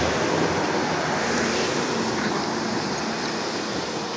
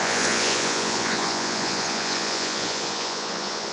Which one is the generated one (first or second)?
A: second